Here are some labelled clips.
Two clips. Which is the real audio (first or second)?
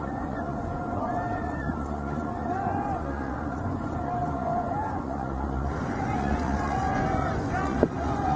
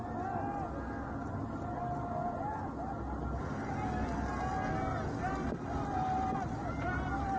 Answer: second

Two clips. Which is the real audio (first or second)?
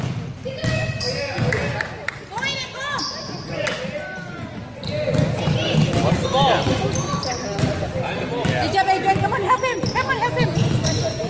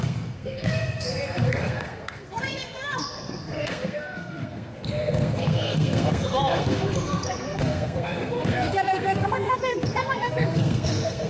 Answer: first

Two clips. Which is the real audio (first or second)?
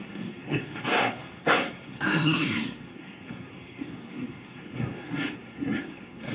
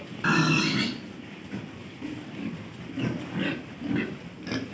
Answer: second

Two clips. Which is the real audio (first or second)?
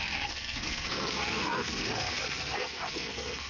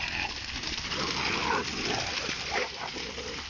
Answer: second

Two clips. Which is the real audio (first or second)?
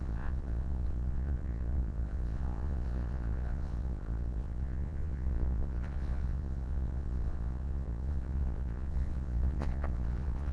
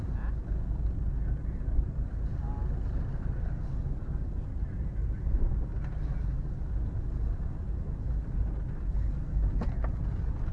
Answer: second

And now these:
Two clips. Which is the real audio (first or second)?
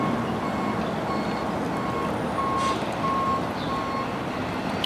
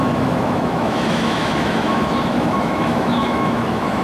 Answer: first